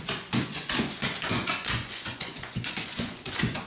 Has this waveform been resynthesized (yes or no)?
yes